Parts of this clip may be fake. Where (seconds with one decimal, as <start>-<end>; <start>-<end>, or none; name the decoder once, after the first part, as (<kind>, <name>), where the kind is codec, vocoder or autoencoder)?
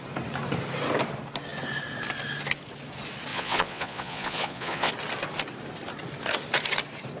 3.3-4.9 (vocoder, Vocos)